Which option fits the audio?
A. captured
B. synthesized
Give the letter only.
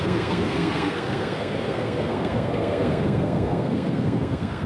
B